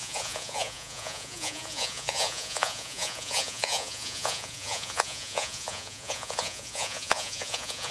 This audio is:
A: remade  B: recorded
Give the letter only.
A